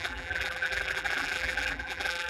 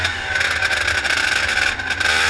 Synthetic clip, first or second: first